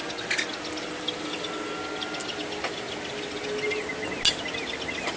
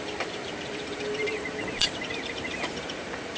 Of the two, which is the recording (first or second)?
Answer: first